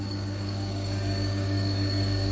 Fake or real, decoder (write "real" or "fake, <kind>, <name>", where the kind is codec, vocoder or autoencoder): fake, codec, DAC